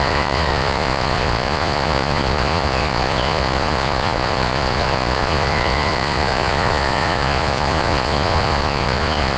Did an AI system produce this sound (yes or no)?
yes